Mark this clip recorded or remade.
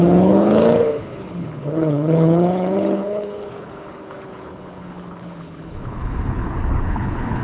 remade